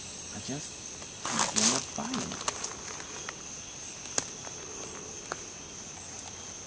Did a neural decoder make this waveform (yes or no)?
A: no